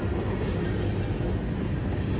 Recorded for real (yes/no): yes